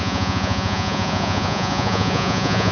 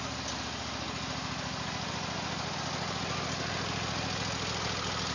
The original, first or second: second